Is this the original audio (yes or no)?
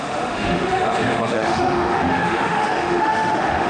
no